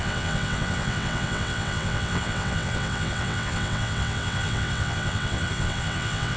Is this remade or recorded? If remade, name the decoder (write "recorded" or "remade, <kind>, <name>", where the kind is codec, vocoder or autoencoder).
remade, vocoder, WaveNeXt